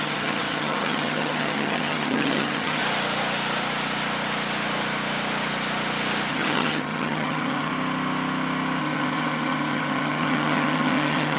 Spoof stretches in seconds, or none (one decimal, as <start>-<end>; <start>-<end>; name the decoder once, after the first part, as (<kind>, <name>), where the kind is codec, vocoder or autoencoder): 0.0-2.8 (vocoder, HiFi-GAN); 6.3-7.7; 8.8-11.4